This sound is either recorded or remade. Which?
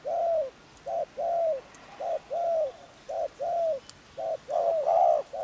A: recorded